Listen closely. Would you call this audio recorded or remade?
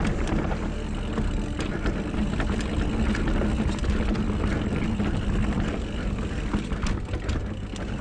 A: recorded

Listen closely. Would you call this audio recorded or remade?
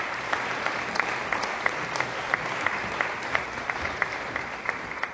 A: remade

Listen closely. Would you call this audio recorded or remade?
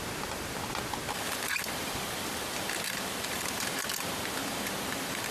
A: remade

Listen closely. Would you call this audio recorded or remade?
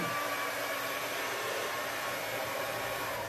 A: remade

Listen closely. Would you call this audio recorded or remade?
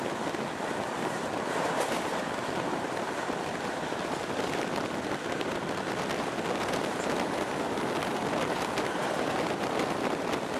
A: remade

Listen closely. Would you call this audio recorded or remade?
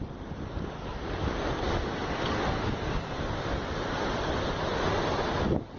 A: remade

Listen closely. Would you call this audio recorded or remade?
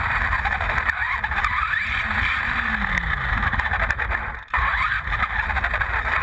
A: remade